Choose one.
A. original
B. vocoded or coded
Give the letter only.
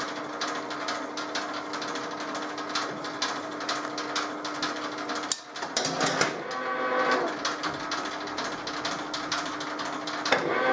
A